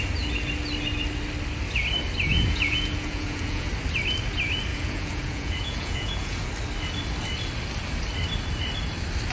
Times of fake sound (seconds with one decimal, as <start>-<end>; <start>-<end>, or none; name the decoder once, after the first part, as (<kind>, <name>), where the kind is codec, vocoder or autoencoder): 2.3-3.7 (vocoder, Vocos); 4.7-6.5